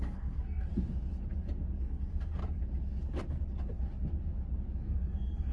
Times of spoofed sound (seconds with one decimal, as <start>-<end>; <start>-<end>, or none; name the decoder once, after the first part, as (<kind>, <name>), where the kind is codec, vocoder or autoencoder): 0.0-0.7 (codec, SNAC); 1.8-2.4; 4.8-5.5